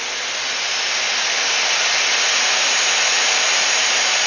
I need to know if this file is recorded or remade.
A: recorded